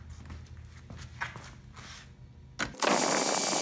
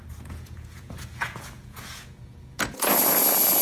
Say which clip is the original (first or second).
first